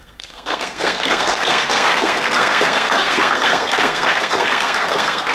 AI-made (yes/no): yes